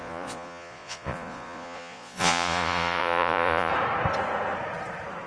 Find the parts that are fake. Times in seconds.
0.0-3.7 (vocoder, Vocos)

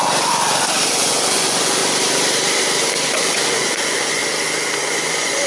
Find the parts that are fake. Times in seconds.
0.9-1.8 (vocoder, Vocos); 3.2-4.2; 4.8-5.5